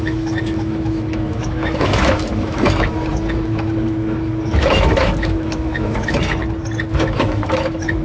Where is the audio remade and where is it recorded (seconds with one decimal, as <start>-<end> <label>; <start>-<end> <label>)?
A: 0.0-6.4 remade; 6.4-7.0 recorded; 7.0-8.0 remade